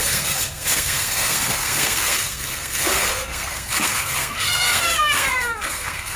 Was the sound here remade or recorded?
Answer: remade